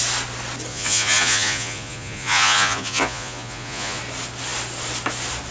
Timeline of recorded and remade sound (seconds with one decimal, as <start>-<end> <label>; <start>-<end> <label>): 0.0-0.7 recorded; 0.7-4.0 remade; 4.0-5.5 recorded